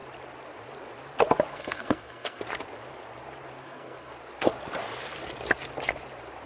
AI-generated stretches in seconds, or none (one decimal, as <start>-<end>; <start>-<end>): 1.5-2.4; 3.6-4.1